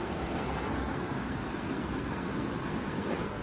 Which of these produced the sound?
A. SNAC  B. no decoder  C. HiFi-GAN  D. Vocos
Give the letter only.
A